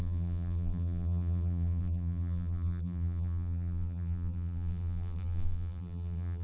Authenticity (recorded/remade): remade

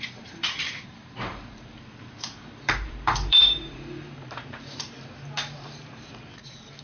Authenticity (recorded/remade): remade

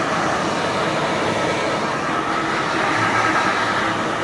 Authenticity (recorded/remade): remade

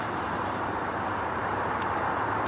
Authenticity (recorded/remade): remade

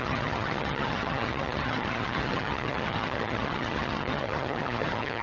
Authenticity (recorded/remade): remade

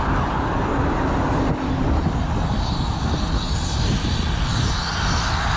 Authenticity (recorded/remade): recorded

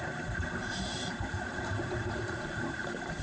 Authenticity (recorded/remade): remade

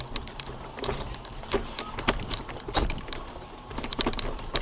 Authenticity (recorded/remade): remade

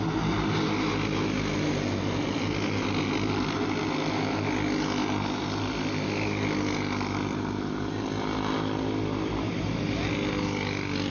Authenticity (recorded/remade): recorded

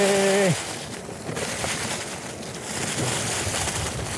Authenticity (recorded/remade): recorded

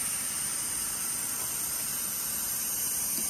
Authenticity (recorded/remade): recorded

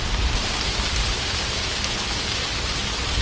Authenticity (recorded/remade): remade